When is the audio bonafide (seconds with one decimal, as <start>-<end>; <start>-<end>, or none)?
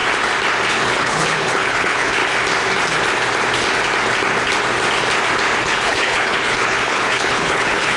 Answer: 0.0-0.7; 2.2-5.6